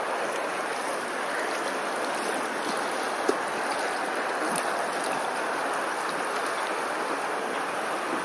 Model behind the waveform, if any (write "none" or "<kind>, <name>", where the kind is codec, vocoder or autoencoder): none